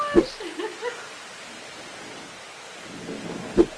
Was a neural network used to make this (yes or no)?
no